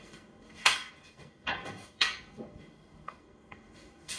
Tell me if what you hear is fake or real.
fake